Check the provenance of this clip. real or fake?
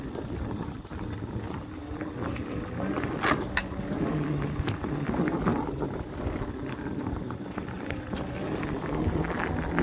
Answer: real